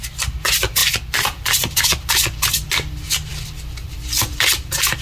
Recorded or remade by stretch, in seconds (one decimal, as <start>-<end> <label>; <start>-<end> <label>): 0.0-0.8 recorded; 0.8-2.7 remade; 2.7-3.3 recorded; 3.3-4.4 remade; 4.4-5.0 recorded